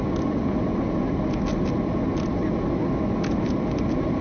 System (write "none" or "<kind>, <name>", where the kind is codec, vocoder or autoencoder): none